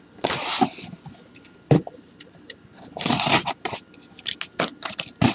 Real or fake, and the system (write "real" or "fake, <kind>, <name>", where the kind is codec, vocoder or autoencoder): real